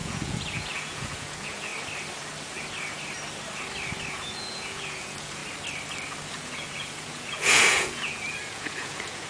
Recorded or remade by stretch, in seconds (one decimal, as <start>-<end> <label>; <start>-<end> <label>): 0.0-1.7 remade; 1.7-4.1 recorded; 4.1-5.4 remade; 5.4-6.3 recorded; 6.3-9.3 remade